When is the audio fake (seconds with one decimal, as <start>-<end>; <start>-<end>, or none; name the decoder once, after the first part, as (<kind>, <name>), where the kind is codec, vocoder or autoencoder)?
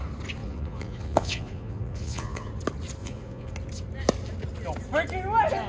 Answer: 0.4-2.5 (vocoder, Vocos); 3.0-3.5